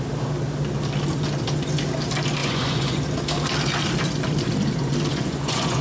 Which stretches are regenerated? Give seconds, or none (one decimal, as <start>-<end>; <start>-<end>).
2.4-3.0; 5.1-5.8